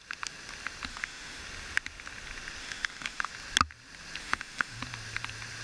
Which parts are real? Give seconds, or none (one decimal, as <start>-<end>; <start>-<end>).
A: 0.0-0.9; 1.4-2.6; 3.3-4.2; 4.8-5.6